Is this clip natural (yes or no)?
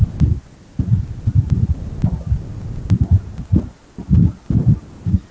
yes